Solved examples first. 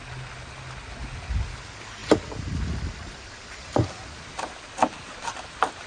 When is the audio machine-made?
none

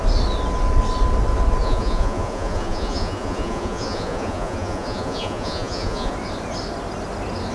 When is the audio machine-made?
1.6-6.1 (vocoder, Vocos)

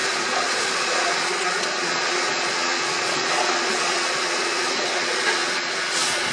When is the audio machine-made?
0.0-6.3 (vocoder, Vocos)

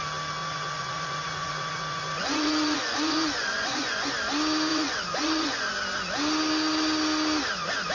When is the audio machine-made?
0.4-4.1 (vocoder, Vocos); 4.7-5.7

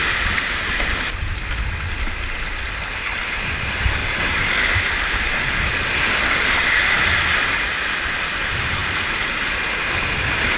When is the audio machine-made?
none